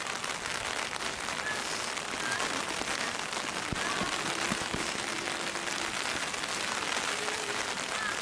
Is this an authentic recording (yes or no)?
yes